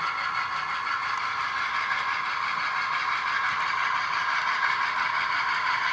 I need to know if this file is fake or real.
real